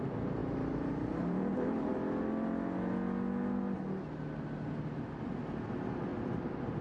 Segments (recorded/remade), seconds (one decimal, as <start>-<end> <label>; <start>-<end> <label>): 0.0-0.4 recorded; 0.4-1.8 remade; 1.8-6.1 recorded; 6.1-6.8 remade

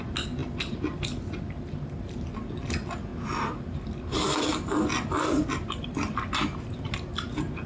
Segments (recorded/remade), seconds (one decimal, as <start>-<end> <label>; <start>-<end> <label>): 0.0-7.7 recorded

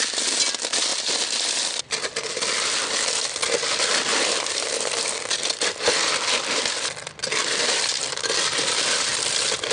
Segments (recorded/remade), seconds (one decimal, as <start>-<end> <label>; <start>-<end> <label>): 0.0-0.9 recorded; 0.9-3.4 remade; 3.4-4.1 recorded; 4.1-4.7 remade; 4.7-7.4 recorded; 7.4-9.1 remade; 9.1-9.7 recorded

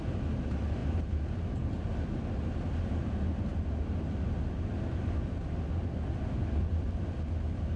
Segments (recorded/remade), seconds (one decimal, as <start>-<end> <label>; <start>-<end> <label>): 0.0-7.8 recorded

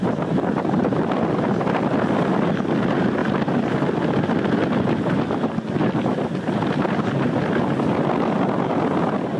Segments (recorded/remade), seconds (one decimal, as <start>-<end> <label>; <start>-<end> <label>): 0.0-9.4 recorded

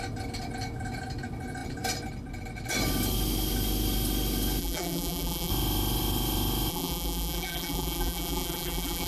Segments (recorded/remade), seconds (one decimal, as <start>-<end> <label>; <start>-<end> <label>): 0.0-4.6 recorded; 4.6-5.5 remade; 5.5-6.7 recorded; 6.7-9.1 remade

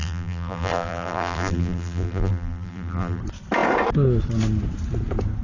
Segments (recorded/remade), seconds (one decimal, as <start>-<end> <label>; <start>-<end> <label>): 0.0-3.2 remade; 3.2-5.4 recorded

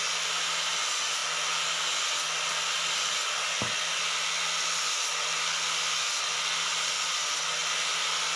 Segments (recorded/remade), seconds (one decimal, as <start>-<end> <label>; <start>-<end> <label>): 0.0-8.4 recorded